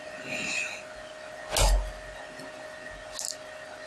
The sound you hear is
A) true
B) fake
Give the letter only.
A